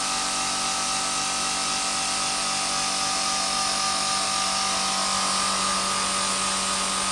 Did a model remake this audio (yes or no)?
no